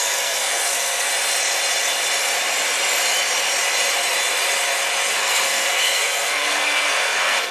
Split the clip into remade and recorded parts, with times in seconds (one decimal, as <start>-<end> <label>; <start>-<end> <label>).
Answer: 0.0-1.1 remade; 1.1-5.1 recorded; 5.1-7.5 remade